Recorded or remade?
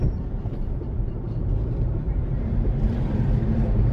remade